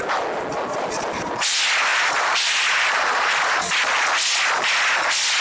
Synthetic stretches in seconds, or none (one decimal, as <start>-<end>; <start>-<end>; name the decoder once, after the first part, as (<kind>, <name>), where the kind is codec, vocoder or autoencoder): 1.9-3.7 (vocoder, BigVGAN v2)

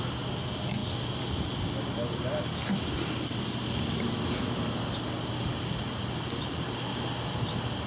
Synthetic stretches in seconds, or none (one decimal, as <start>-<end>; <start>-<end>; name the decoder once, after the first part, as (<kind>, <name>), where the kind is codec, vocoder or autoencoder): none